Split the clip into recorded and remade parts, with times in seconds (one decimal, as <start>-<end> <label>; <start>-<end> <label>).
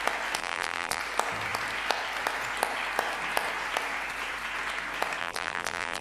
0.0-0.4 recorded; 0.4-1.0 remade; 1.0-5.2 recorded; 5.2-6.0 remade